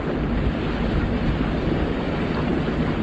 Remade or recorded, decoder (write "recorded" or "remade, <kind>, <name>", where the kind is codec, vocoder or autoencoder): recorded